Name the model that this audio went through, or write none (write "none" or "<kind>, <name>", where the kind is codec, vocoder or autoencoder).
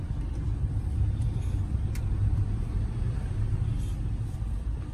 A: none